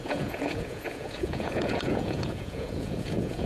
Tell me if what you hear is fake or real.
fake